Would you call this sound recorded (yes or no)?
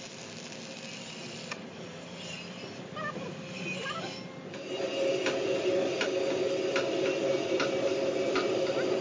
yes